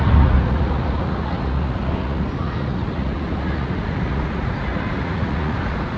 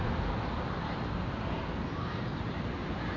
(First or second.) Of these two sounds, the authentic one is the second